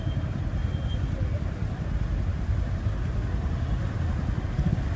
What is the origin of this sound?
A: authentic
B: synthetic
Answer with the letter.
A